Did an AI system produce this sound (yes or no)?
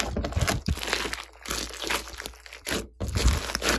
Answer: no